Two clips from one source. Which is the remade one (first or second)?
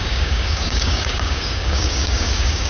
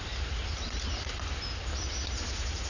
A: first